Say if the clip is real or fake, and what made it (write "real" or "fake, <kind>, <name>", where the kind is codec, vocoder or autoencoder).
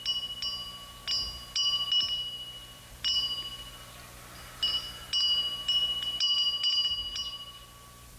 real